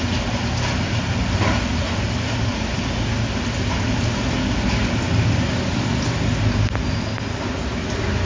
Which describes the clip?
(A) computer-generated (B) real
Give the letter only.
B